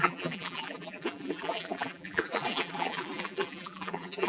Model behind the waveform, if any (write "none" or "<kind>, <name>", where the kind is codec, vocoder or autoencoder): vocoder, BigVGAN v2